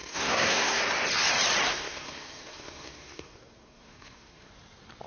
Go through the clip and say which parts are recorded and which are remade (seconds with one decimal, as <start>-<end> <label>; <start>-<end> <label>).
0.0-0.8 remade; 0.8-1.7 recorded; 1.7-4.5 remade; 4.5-5.1 recorded